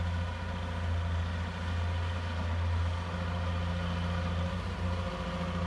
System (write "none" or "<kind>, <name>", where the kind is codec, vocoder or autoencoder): none